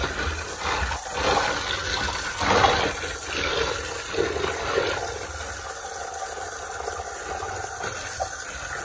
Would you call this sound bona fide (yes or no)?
yes